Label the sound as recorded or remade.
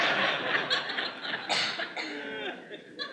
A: recorded